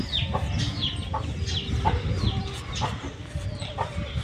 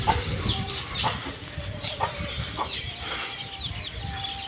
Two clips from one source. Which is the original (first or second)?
first